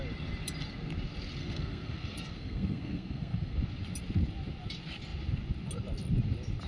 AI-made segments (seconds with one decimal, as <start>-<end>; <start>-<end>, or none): 1.4-3.6